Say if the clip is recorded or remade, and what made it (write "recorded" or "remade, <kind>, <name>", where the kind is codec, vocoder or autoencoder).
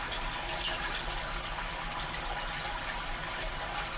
recorded